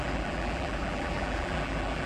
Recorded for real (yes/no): no